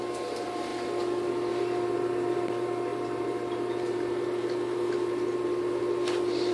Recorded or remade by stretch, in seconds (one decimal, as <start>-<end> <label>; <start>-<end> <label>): 0.0-0.7 remade; 0.7-1.5 recorded; 1.5-6.5 remade